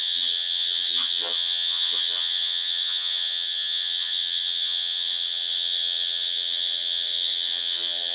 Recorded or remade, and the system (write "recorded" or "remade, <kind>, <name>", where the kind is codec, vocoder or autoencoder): remade, vocoder, HiFi-GAN